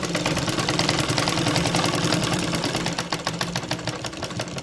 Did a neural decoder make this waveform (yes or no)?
yes